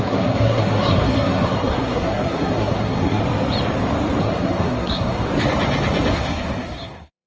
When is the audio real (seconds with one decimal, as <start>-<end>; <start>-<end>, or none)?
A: 3.2-4.2; 5.3-6.1